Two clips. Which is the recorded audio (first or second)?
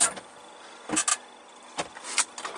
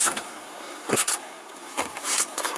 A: first